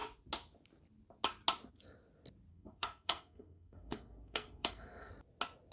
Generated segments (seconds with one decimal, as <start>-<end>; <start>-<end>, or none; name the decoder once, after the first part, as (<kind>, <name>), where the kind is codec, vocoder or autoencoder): 2.5-5.1 (codec, SNAC)